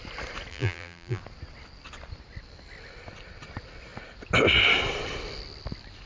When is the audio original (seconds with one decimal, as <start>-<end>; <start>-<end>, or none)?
0.0-0.5; 1.2-6.1

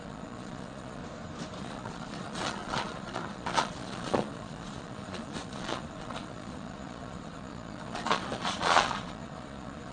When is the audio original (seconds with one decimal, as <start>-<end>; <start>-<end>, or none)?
1.0-1.6

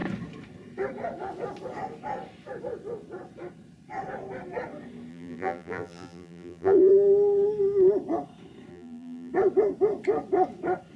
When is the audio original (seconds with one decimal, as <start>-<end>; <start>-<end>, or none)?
0.0-5.1; 6.9-8.7; 9.3-11.0

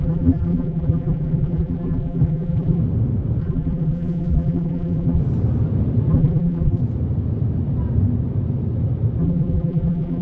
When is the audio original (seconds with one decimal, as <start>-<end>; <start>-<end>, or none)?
2.8-3.4; 5.2-6.1; 6.8-9.2